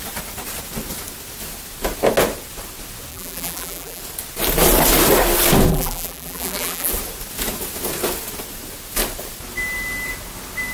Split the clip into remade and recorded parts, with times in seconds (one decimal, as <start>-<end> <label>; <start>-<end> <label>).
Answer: 0.0-3.1 recorded; 3.1-4.0 remade; 4.0-5.7 recorded; 5.7-6.9 remade; 6.9-10.7 recorded